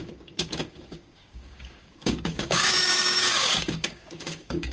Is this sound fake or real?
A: fake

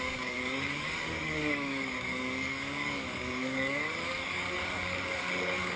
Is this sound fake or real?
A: fake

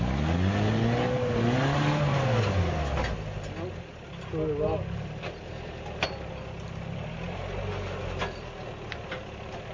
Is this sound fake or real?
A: real